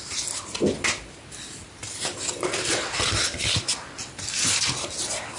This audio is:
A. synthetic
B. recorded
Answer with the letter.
B